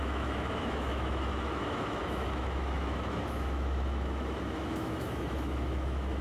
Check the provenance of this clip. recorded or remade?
remade